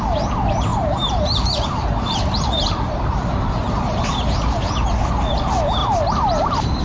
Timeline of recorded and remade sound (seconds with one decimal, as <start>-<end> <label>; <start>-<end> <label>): 0.0-0.7 recorded; 0.7-3.3 remade; 3.3-5.8 recorded; 5.8-6.8 remade

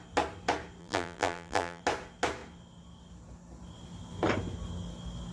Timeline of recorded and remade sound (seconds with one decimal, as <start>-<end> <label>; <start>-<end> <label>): 0.0-0.8 recorded; 0.8-1.8 remade; 1.8-5.3 recorded

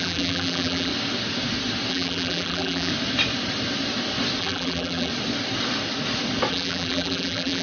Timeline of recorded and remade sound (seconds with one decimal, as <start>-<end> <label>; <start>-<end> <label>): 0.0-0.9 remade; 0.9-1.9 recorded; 1.9-2.9 remade; 2.9-4.4 recorded; 4.4-5.1 remade; 5.1-6.5 recorded; 6.5-7.6 remade